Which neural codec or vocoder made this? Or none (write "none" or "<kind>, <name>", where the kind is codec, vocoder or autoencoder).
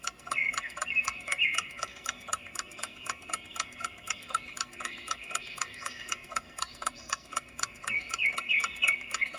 codec, SNAC